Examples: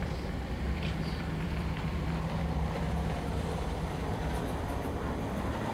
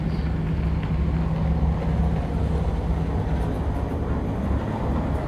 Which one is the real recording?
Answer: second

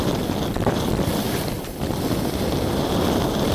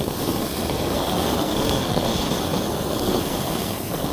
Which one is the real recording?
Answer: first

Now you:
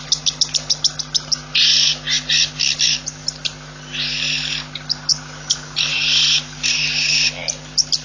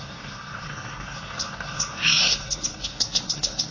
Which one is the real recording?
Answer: first